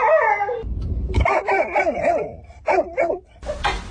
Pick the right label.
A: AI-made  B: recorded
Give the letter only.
A